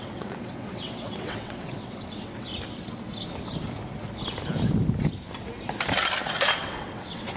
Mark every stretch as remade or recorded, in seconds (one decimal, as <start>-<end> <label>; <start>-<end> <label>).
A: 0.0-2.5 remade; 2.5-6.5 recorded; 6.5-7.4 remade